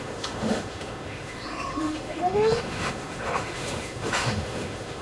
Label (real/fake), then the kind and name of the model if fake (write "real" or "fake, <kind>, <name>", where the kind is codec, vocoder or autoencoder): fake, autoencoder, DAC-VAE